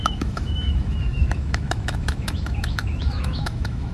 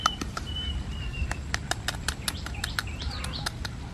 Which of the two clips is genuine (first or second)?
second